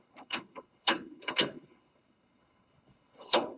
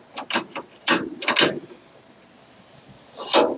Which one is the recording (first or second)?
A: second